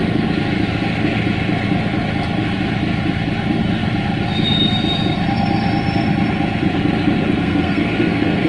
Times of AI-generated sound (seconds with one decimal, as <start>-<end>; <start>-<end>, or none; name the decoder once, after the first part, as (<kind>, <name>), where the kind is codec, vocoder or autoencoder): 7.4-8.5 (codec, SNAC)